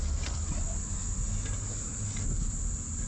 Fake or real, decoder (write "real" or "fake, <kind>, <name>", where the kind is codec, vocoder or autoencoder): real